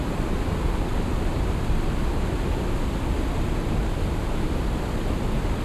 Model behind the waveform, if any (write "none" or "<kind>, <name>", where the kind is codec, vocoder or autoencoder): none